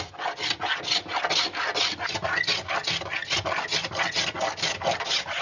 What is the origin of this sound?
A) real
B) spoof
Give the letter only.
A